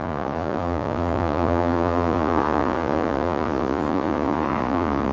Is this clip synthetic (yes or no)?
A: yes